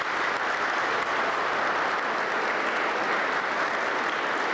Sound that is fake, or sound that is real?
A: real